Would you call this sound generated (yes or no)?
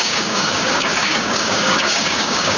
yes